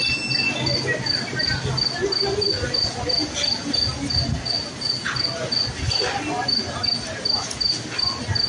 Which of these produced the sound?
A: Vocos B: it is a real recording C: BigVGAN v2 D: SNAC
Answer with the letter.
B